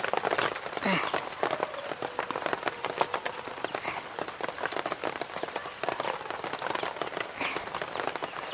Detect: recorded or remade recorded